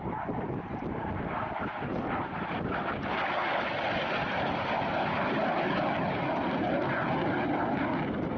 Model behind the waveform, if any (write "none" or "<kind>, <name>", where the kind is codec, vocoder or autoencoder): none